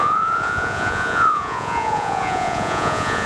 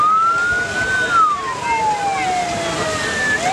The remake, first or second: first